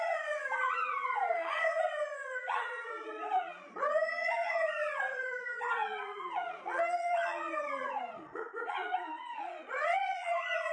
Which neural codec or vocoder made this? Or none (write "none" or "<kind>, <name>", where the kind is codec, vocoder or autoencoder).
vocoder, Vocos